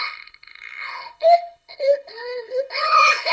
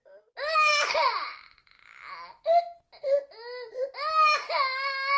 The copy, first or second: first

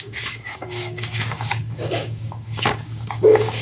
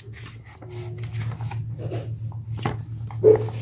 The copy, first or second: first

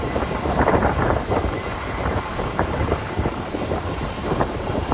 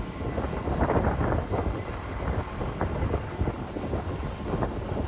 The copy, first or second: first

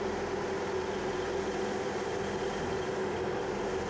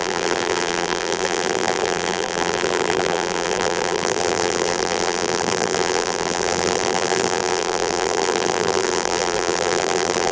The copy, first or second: second